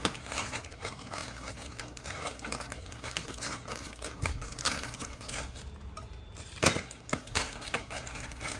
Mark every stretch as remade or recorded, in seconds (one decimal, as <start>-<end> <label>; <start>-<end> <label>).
0.0-5.6 remade; 5.6-6.6 recorded; 6.6-8.6 remade

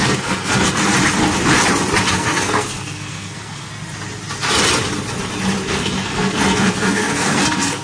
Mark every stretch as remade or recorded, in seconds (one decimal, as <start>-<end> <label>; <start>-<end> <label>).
0.0-0.9 remade; 0.9-2.1 recorded; 2.1-3.7 remade; 3.7-5.7 recorded; 5.7-7.8 remade

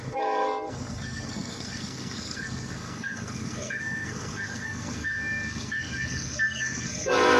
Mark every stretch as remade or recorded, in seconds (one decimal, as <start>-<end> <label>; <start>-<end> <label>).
0.0-7.4 remade

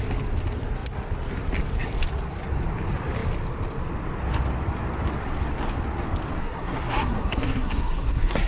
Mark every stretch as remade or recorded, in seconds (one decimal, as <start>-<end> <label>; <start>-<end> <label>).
0.0-6.4 recorded; 6.4-8.5 remade

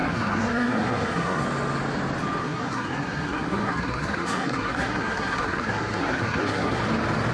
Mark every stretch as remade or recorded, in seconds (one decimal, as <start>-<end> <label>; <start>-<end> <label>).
0.0-1.4 remade; 1.4-2.4 recorded; 2.4-6.8 remade; 6.8-7.3 recorded

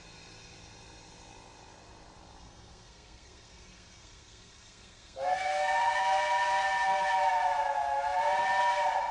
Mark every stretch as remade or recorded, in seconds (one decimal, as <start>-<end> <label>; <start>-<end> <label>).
0.0-2.4 recorded; 2.4-6.0 remade; 6.0-9.1 recorded

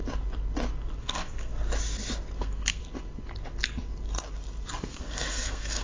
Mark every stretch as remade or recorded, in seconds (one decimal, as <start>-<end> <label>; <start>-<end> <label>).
0.0-1.0 recorded; 1.0-1.5 remade; 1.5-2.4 recorded; 2.4-2.8 remade; 2.8-4.9 recorded; 4.9-5.8 remade

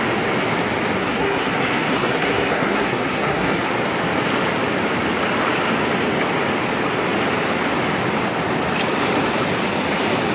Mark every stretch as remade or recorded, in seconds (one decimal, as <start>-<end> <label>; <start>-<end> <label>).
0.0-1.0 recorded; 1.0-3.6 remade; 3.6-10.3 recorded